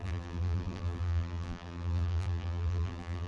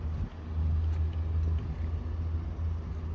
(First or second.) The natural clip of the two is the second